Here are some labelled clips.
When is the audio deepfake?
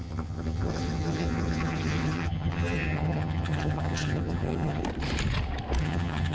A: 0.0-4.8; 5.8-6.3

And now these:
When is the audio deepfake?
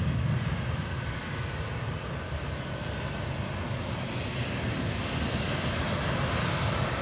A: none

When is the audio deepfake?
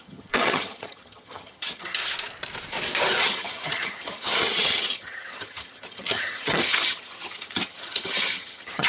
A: 0.0-2.0; 3.2-8.9